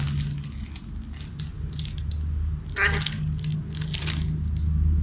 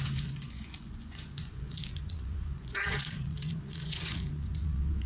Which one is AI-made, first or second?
second